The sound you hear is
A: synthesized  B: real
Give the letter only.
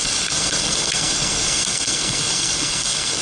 A